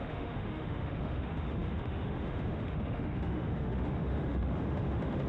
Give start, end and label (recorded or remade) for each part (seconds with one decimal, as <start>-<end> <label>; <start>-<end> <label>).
0.0-5.3 remade